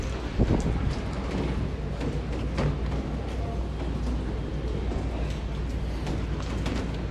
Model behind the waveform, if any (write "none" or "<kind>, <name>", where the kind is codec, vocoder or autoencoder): none